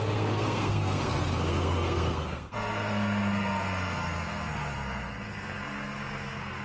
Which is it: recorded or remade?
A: remade